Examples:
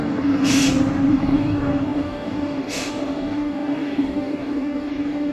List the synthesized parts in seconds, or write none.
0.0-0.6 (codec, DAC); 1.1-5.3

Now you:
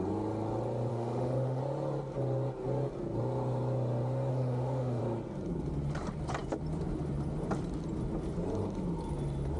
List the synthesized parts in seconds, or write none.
0.9-1.6 (autoencoder, DAC-VAE); 4.3-5.0

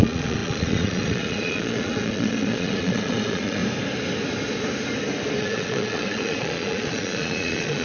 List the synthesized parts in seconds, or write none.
0.0-3.6 (vocoder, Vocos); 5.4-7.8

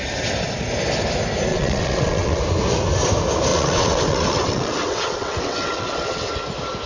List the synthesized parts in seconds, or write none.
1.5-2.4 (vocoder, WaveNeXt); 3.5-6.3